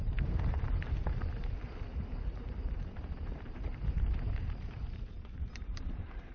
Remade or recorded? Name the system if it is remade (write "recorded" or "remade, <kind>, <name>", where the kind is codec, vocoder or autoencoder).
remade, vocoder, BigVGAN v2